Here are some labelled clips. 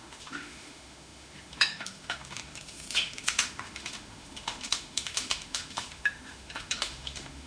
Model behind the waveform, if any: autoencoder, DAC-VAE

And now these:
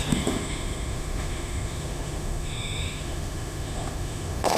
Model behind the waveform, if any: autoencoder, DAC-VAE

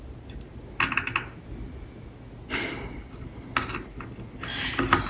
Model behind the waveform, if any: none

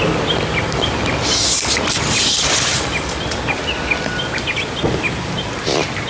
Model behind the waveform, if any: none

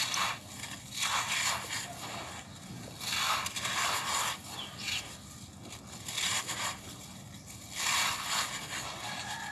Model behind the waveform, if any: none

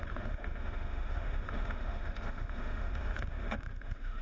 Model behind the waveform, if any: autoencoder, DAC-VAE